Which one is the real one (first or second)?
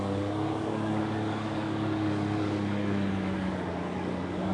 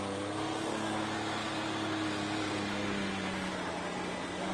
second